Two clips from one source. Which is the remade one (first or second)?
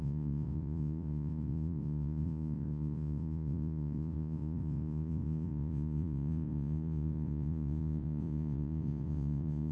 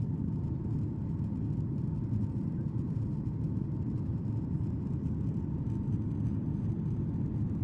first